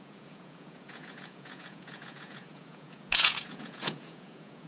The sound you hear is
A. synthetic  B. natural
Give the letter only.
A